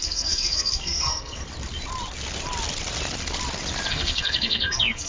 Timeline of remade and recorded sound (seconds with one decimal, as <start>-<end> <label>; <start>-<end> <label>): 0.0-1.4 remade; 1.4-3.9 recorded; 3.9-5.1 remade

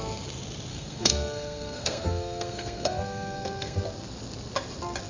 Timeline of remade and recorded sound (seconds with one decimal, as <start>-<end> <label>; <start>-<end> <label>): 0.0-0.7 recorded; 0.7-3.8 remade; 3.8-5.1 recorded

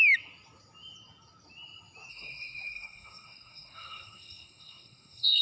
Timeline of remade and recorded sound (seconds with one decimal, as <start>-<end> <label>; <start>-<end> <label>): 0.0-2.1 recorded; 2.1-5.4 remade

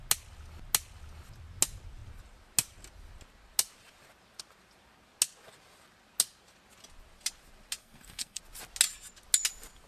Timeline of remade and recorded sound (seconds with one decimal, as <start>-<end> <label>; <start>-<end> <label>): 0.0-7.8 recorded; 7.8-8.4 remade; 8.4-9.9 recorded

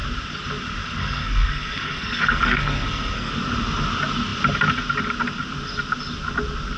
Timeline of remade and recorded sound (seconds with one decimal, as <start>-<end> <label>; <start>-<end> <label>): 0.0-1.0 recorded; 1.0-3.3 remade; 3.3-6.8 recorded

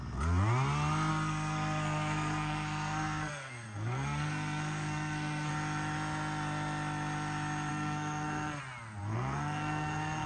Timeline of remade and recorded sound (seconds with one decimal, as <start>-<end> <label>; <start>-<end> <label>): 0.0-1.1 recorded; 1.1-5.5 remade; 5.5-7.7 recorded; 7.7-8.6 remade; 8.6-9.0 recorded; 9.0-10.3 remade